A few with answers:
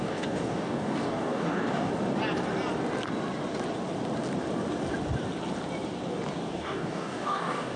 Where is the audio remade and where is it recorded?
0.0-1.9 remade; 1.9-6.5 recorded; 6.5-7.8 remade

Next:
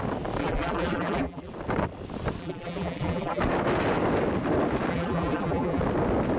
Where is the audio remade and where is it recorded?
0.0-0.4 recorded; 0.4-1.5 remade; 1.5-2.4 recorded; 2.4-3.4 remade; 3.4-4.9 recorded; 4.9-5.8 remade; 5.8-6.4 recorded

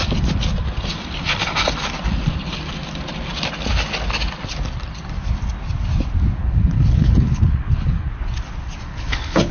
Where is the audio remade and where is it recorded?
0.0-6.4 recorded; 6.4-8.1 remade; 8.1-8.9 recorded; 8.9-9.5 remade

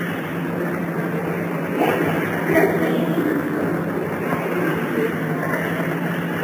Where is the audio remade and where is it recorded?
0.0-3.0 recorded; 3.0-3.6 remade; 3.6-6.4 recorded

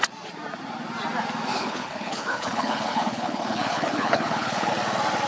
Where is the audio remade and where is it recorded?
0.0-1.5 recorded; 1.5-4.7 remade; 4.7-5.3 recorded

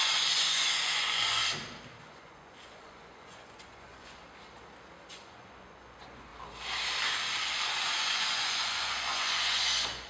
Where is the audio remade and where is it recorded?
0.0-1.4 remade; 1.4-2.0 recorded; 2.0-4.2 remade; 4.2-5.1 recorded; 5.1-6.3 remade; 6.3-7.4 recorded; 7.4-10.1 remade

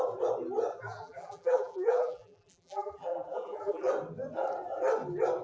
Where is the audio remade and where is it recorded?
0.0-0.7 recorded; 0.7-3.9 remade; 3.9-5.4 recorded